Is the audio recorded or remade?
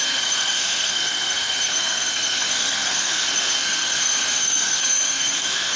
remade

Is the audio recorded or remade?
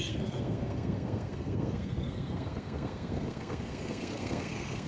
remade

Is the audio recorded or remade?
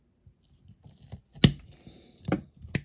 recorded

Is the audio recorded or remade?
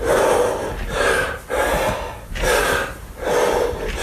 recorded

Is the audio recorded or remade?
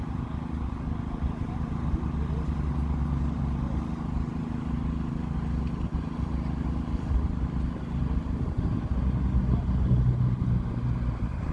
recorded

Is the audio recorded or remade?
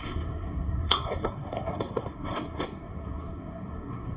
remade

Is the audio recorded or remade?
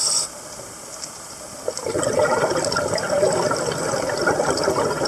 recorded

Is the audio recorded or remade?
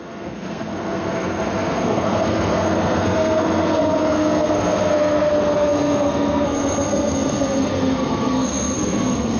remade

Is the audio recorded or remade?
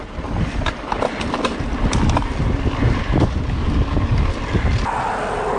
recorded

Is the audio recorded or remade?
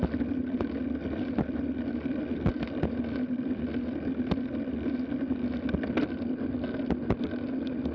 recorded